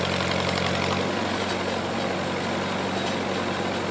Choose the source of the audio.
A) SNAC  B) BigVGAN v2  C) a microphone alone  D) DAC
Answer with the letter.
C